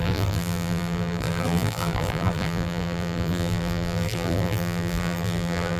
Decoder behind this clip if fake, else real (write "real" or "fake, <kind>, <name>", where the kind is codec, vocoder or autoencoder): fake, vocoder, BigVGAN v2